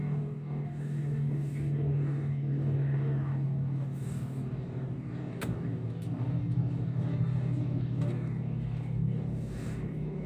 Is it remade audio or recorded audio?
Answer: remade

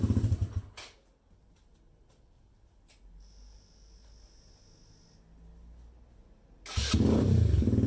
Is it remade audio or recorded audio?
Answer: recorded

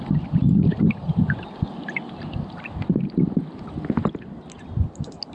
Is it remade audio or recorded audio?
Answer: recorded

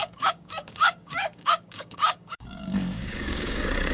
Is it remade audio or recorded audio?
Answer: remade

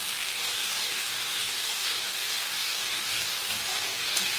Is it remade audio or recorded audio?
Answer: remade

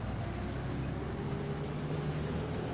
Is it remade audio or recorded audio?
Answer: recorded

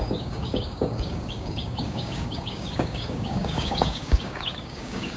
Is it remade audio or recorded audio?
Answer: remade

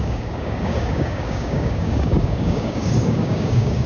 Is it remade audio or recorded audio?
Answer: remade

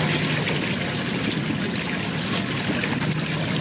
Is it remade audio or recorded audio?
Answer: recorded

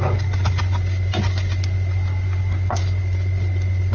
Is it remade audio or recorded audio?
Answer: recorded